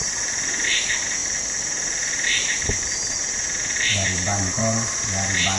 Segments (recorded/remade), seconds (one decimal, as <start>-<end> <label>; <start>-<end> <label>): 0.0-5.6 recorded